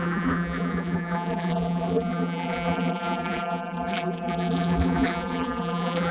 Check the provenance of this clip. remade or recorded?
remade